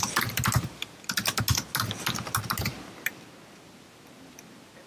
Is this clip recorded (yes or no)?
yes